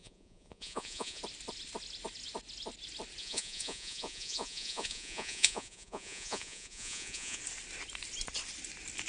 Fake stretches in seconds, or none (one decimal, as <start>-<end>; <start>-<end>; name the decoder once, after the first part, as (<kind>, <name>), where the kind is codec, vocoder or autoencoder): 0.0-1.2 (vocoder, Vocos); 3.2-7.4